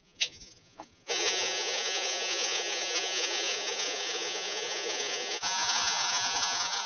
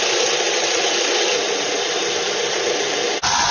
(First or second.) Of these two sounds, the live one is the second